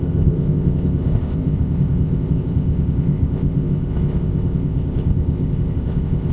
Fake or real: fake